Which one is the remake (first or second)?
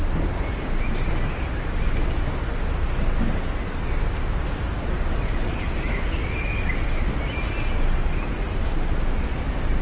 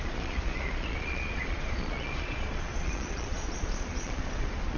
second